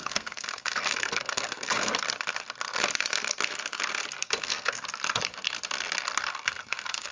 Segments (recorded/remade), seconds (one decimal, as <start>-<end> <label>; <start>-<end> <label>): 0.0-1.9 remade; 1.9-4.2 recorded; 4.2-4.8 remade; 4.8-6.3 recorded; 6.3-7.1 remade